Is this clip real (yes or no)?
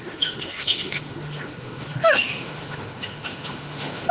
no